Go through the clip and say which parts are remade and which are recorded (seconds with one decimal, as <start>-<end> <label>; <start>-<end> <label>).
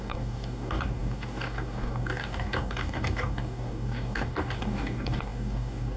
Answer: 0.0-6.0 remade